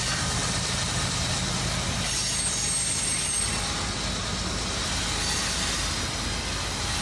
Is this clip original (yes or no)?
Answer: yes